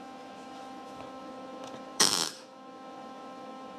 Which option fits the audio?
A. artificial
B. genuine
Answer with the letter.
A